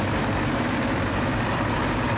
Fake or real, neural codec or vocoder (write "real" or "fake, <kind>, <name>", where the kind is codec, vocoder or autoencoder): fake, vocoder, BigVGAN v2